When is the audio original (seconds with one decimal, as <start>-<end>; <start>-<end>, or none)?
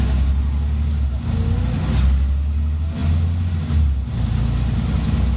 0.0-5.4